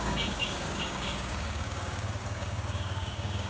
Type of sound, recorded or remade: remade